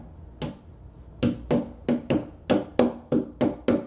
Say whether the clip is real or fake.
real